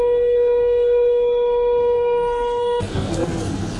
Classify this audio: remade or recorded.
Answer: remade